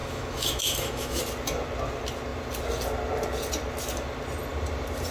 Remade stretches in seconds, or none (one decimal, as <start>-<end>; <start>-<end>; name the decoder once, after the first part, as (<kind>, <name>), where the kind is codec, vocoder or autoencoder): 0.0-1.2 (autoencoder, DAC-VAE)